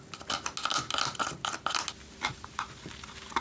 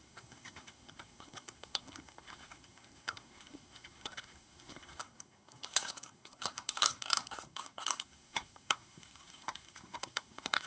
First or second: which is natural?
first